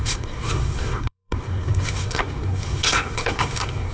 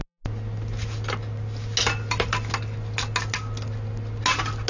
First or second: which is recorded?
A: second